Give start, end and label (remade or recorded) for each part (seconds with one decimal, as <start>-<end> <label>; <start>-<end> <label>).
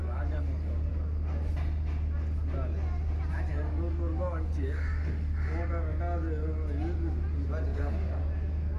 0.0-0.9 remade; 0.9-3.5 recorded; 3.5-5.9 remade; 5.9-7.7 recorded; 7.7-8.2 remade; 8.2-8.8 recorded